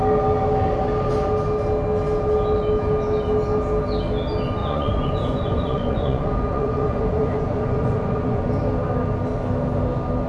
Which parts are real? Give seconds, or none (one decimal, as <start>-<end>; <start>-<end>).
0.0-4.6; 8.5-10.3

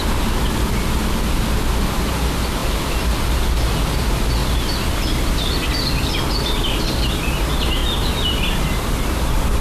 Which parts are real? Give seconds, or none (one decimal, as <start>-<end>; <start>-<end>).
0.0-9.6

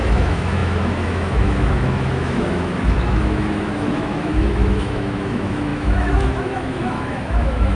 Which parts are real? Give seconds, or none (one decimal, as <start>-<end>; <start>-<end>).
none

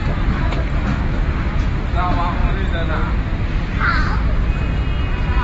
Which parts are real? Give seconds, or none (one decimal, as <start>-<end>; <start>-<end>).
0.0-5.4

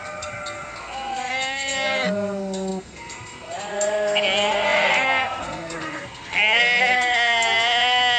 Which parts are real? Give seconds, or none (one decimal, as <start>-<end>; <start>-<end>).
none

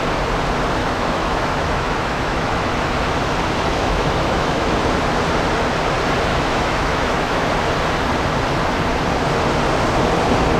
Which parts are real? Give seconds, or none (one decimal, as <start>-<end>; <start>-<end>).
0.0-0.8; 2.7-3.7; 4.7-6.3; 7.5-10.6

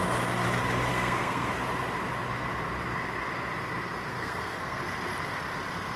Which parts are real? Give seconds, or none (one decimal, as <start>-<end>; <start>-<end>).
0.0-0.9; 1.5-4.1; 4.8-6.0